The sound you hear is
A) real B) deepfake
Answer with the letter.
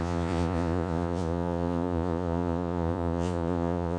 B